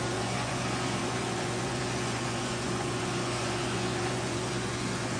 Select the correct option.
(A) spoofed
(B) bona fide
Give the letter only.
A